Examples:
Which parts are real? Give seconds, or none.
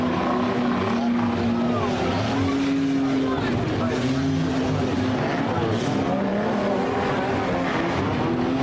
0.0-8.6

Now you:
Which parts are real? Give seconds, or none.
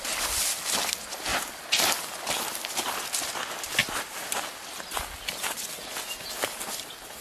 0.0-3.8; 5.0-7.2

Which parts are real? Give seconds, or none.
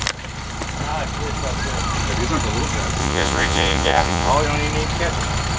0.0-3.0; 4.3-5.6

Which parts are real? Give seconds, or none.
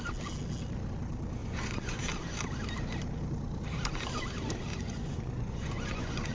0.0-1.4; 2.0-4.7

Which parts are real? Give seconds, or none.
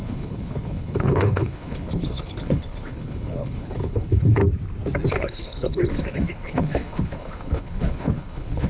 4.4-5.1